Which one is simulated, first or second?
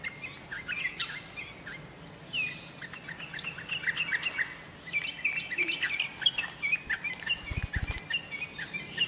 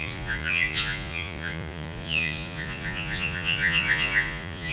second